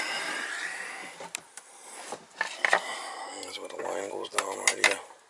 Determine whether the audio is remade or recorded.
recorded